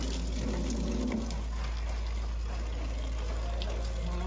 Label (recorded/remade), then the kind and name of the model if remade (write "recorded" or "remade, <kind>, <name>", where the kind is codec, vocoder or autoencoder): recorded